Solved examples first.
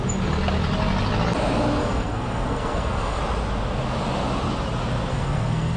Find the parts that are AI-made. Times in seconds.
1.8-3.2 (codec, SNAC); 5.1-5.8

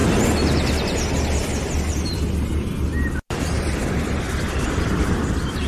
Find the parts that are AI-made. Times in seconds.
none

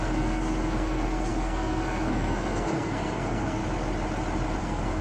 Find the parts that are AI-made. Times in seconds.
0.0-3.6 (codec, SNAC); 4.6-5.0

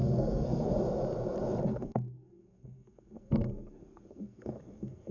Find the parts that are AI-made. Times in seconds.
0.0-0.7 (codec, SNAC); 1.7-5.1

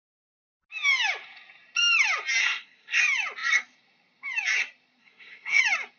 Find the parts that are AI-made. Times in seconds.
2.4-3.0 (codec, SNAC); 5.0-5.6

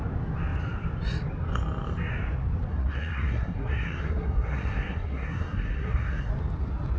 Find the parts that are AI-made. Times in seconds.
2.7-6.3 (codec, SNAC)

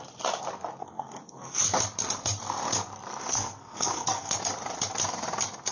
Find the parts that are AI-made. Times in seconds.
0.8-1.6 (codec, SNAC); 3.2-4.3